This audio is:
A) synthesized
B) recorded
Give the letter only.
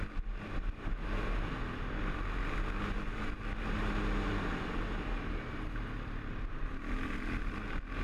B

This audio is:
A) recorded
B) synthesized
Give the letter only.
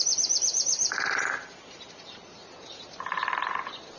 B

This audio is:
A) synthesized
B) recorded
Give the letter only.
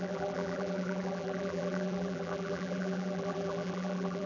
A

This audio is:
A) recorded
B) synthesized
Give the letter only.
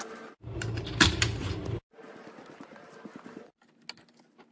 A